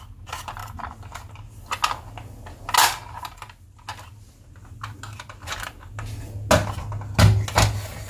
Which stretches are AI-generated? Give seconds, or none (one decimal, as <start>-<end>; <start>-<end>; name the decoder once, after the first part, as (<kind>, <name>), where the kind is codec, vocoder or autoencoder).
none